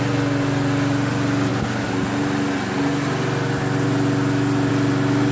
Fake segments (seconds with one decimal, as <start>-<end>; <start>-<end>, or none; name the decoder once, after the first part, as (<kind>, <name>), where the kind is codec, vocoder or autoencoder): none